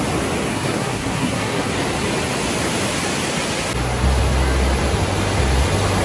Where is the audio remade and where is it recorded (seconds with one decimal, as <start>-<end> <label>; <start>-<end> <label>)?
0.0-0.5 recorded; 0.5-1.7 remade; 1.7-6.0 recorded